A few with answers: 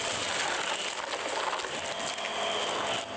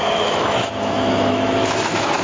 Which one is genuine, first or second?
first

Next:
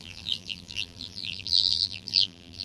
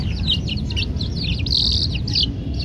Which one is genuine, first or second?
second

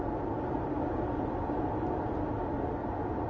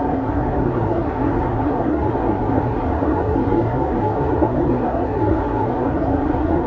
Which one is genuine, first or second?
first